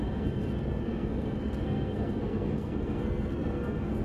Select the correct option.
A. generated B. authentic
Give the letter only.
A